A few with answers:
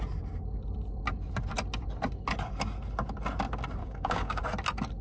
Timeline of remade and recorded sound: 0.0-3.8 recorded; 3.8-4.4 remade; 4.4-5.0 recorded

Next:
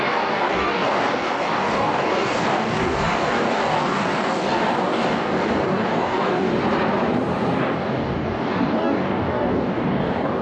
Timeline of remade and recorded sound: 0.0-6.5 remade; 6.5-7.6 recorded; 7.6-10.4 remade

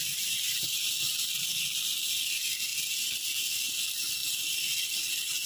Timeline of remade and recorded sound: 0.0-5.5 recorded

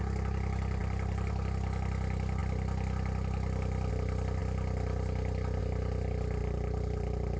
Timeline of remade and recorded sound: 0.0-0.8 recorded; 0.8-1.3 remade; 1.3-6.4 recorded; 6.4-7.4 remade

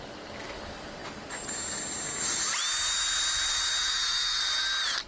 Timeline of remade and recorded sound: 0.0-3.8 recorded; 3.8-4.4 remade; 4.4-5.1 recorded

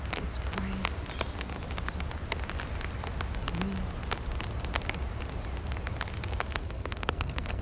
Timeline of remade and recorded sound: 0.0-6.6 recorded; 6.6-7.6 remade

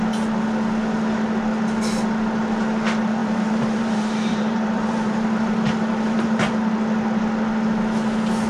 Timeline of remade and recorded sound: 0.0-3.2 recorded; 3.2-6.5 remade; 6.5-8.5 recorded

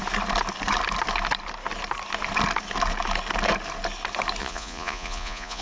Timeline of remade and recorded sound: 0.0-4.4 recorded; 4.4-5.6 remade